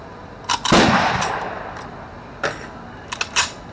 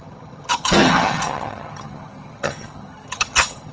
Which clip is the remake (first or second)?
second